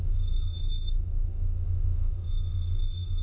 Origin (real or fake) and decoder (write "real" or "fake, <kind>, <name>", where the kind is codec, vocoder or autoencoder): fake, autoencoder, DAC-VAE